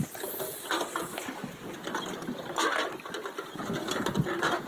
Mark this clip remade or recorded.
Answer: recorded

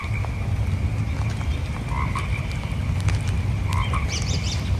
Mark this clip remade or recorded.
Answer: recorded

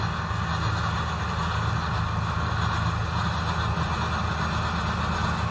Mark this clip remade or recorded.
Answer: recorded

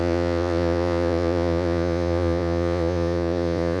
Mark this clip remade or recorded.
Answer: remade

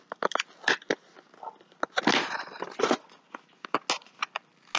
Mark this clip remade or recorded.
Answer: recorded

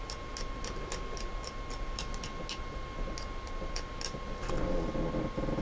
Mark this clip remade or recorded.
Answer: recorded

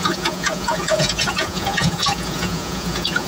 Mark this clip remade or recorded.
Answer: remade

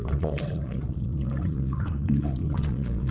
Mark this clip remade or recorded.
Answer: remade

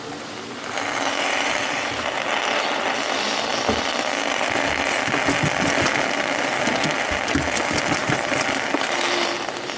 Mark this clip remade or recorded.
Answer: recorded